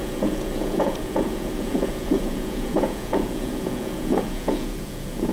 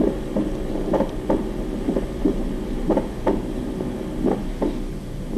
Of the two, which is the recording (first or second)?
second